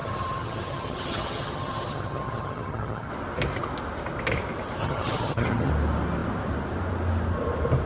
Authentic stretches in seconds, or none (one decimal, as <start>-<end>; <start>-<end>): 3.1-4.8; 5.7-7.9